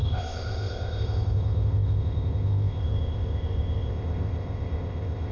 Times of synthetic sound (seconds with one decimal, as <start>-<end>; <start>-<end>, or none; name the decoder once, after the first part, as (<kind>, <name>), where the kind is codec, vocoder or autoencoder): 0.0-5.3 (codec, ZipCodec)